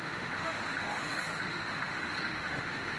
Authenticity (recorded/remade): remade